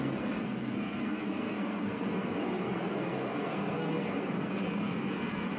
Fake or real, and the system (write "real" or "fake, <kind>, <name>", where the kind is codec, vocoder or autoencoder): fake, codec, SNAC